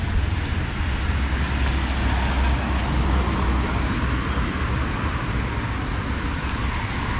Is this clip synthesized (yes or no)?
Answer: no